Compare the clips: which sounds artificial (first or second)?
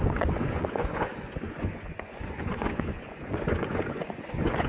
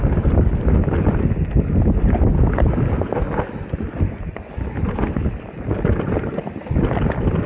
first